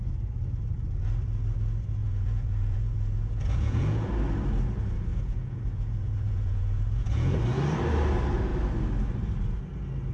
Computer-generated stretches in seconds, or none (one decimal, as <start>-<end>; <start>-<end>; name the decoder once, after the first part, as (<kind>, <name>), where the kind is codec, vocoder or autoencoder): 2.0-4.1 (vocoder, Vocos); 5.1-7.4